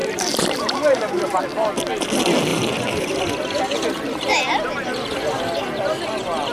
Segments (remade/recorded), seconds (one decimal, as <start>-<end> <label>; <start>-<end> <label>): 0.0-1.4 remade; 1.4-2.5 recorded; 2.5-3.2 remade; 3.2-6.5 recorded